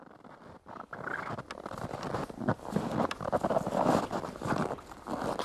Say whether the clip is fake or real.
real